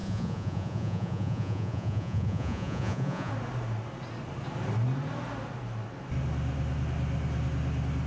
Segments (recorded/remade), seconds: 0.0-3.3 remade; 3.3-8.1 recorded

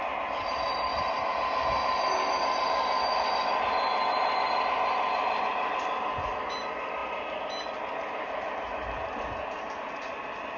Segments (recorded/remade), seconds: 0.0-10.6 recorded

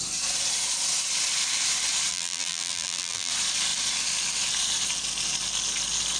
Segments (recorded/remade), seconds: 0.0-2.1 recorded; 2.1-3.3 remade; 3.3-6.2 recorded

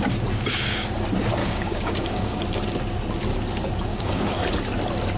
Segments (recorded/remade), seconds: 0.0-1.4 recorded; 1.4-2.4 remade; 2.4-3.9 recorded; 3.9-4.4 remade; 4.4-5.2 recorded